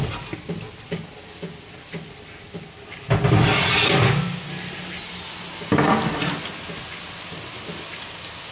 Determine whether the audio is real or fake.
real